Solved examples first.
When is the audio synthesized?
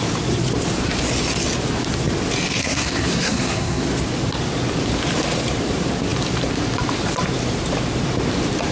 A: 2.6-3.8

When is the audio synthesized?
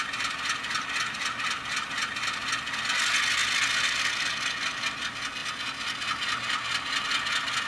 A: none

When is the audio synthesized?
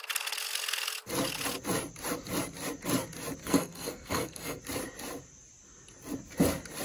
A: 3.4-4.6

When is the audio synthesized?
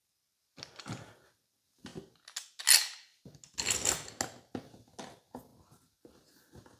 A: none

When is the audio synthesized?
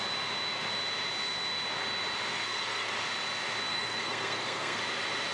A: 2.3-2.9; 3.7-4.8